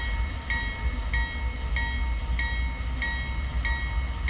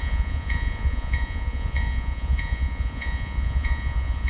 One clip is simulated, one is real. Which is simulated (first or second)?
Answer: second